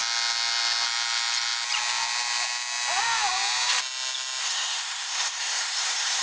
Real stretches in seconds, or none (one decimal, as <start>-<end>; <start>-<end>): 0.0-4.4